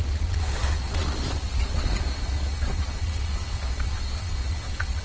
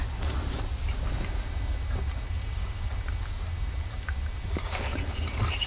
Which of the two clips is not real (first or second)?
first